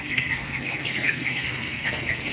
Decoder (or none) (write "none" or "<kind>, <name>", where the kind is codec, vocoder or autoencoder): codec, SNAC